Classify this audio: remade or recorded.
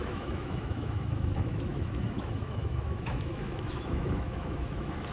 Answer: remade